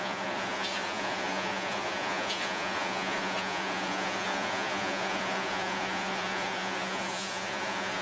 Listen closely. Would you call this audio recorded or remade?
remade